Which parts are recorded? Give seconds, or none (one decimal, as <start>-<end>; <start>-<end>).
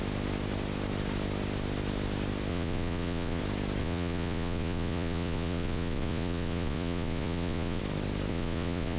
0.0-2.5; 3.4-3.8; 7.8-8.3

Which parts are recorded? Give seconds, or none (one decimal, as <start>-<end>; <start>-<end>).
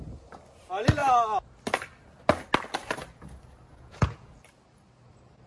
0.0-3.7; 4.3-5.5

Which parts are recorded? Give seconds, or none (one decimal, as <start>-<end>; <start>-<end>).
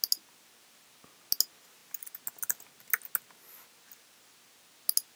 0.0-5.2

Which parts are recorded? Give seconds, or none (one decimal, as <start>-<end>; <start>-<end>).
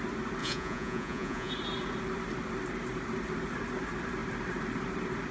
0.0-0.4; 1.5-5.3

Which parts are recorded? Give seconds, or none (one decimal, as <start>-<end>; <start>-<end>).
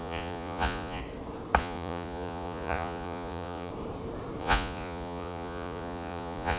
1.0-1.6; 3.7-4.4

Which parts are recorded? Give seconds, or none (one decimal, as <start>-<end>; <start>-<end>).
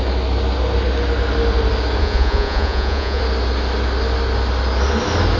0.0-2.0; 3.2-5.4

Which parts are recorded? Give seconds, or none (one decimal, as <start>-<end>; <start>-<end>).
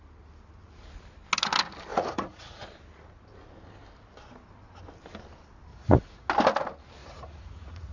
0.0-1.9; 2.6-5.7; 6.3-7.0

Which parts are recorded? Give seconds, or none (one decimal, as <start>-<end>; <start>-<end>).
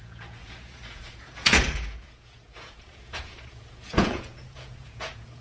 none